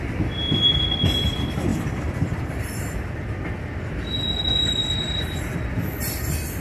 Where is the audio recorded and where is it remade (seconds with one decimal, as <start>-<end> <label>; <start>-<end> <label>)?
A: 0.0-1.7 recorded; 1.7-2.9 remade; 2.9-4.8 recorded; 4.8-5.7 remade; 5.7-6.6 recorded